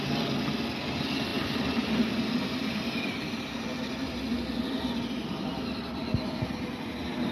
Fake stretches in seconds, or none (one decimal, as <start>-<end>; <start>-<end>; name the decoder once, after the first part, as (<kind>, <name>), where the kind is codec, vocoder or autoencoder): none